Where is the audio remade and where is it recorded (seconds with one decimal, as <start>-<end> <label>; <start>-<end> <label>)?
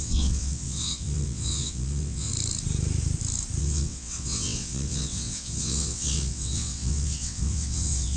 0.0-2.3 remade; 2.3-3.6 recorded; 3.6-8.2 remade